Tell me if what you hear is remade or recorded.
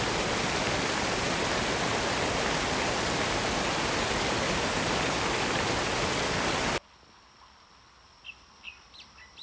recorded